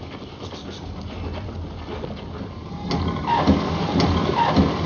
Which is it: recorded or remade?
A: recorded